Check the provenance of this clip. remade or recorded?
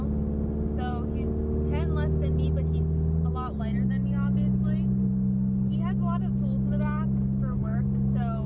recorded